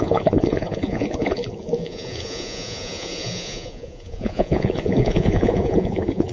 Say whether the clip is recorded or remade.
remade